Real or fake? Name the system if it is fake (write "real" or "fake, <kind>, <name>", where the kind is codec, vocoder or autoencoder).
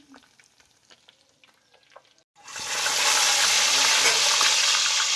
real